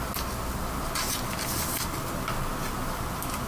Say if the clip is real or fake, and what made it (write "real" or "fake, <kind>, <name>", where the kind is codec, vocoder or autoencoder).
real